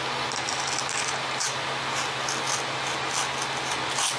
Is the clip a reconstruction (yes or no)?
no